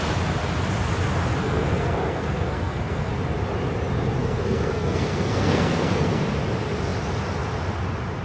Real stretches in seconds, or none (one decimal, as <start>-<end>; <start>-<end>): 0.0-1.4; 3.1-4.2; 6.2-8.2